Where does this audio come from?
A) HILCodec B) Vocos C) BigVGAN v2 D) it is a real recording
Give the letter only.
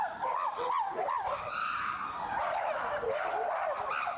D